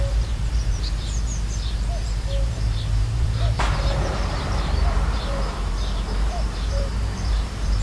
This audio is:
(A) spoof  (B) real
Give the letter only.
A